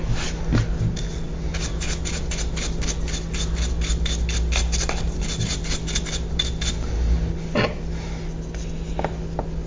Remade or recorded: recorded